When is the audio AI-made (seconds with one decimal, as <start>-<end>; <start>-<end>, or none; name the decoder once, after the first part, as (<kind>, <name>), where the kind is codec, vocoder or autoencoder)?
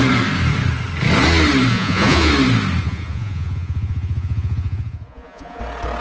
1.7-2.3 (vocoder, Vocos); 2.8-5.6